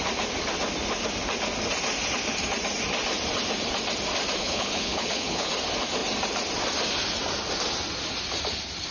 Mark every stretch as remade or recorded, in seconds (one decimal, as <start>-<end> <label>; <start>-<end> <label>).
0.0-4.4 recorded; 4.4-5.5 remade; 5.5-8.9 recorded